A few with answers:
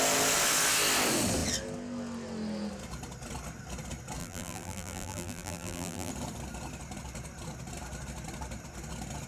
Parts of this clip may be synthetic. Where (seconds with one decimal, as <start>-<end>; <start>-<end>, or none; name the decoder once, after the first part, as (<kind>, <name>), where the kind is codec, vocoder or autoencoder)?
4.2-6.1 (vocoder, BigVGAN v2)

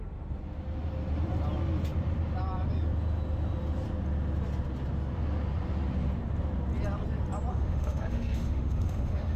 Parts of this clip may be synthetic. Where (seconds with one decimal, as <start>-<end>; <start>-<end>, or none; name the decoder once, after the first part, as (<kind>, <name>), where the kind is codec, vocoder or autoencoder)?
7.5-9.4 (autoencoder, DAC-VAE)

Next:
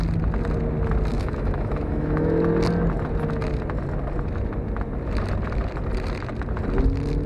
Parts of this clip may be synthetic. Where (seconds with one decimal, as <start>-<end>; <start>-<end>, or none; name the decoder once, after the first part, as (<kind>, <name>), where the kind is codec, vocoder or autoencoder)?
1.1-2.4 (autoencoder, DAC-VAE)